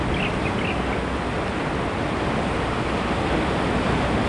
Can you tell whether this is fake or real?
real